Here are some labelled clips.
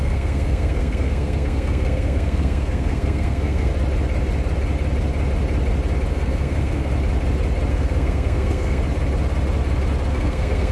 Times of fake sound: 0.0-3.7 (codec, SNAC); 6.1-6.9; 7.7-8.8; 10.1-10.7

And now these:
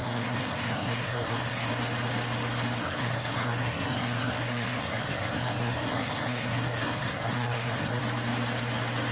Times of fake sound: 0.0-1.7 (codec, SNAC); 2.8-8.0

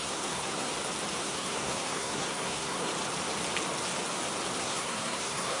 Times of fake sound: 0.0-0.7 (codec, SNAC); 1.2-2.9; 4.6-5.6

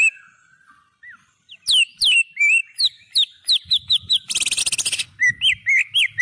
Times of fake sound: none

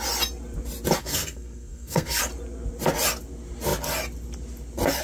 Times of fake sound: 1.0-2.2 (codec, SNAC)